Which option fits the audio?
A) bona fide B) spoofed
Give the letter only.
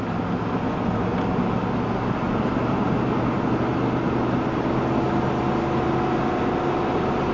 A